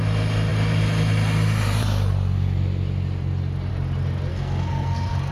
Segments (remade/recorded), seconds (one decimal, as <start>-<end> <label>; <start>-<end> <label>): 0.0-4.3 recorded; 4.3-5.3 remade